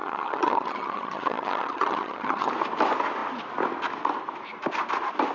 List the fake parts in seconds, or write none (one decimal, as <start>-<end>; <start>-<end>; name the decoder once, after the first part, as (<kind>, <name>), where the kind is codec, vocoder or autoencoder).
0.0-2.5 (vocoder, HiFi-GAN)